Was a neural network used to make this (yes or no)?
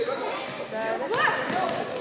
no